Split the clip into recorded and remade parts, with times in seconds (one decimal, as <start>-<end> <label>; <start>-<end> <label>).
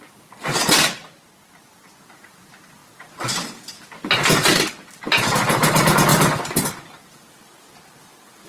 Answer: 0.0-8.5 recorded